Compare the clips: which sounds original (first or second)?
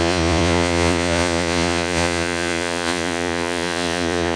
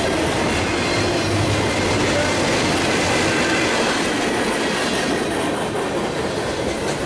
second